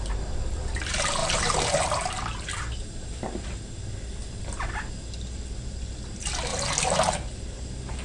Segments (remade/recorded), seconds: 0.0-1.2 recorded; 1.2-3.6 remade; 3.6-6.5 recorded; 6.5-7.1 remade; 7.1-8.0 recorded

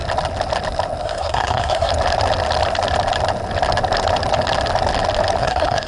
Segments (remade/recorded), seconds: 0.0-1.0 recorded; 1.0-1.9 remade; 1.9-5.4 recorded; 5.4-5.9 remade

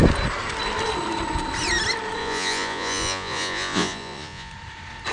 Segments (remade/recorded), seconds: 0.0-2.2 recorded; 2.2-4.5 remade; 4.5-5.1 recorded

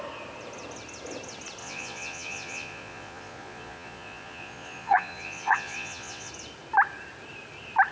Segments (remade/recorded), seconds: 0.0-1.6 recorded; 1.6-6.3 remade; 6.3-7.9 recorded